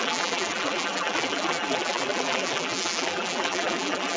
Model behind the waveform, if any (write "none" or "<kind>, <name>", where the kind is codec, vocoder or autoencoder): vocoder, BigVGAN v2